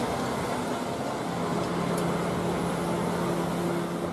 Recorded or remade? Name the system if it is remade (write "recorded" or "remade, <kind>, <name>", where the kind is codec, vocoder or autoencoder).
recorded